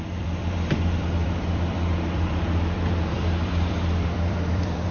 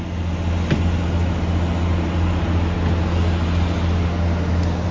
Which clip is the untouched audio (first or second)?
second